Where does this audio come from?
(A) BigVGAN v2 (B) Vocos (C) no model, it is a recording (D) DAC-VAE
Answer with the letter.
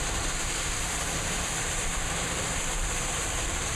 A